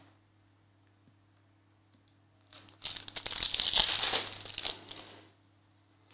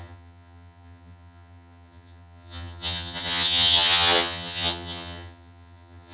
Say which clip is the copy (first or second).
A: second